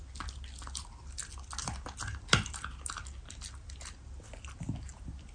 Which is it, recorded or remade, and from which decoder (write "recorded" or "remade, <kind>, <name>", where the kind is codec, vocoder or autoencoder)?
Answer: recorded